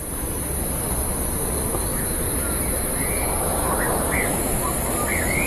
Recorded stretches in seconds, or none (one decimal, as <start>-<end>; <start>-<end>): 0.0-3.5; 4.4-5.5